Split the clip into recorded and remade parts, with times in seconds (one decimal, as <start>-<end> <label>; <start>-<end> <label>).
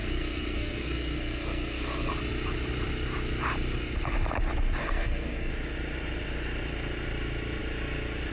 0.0-2.1 remade; 2.1-4.8 recorded; 4.8-5.5 remade; 5.5-8.3 recorded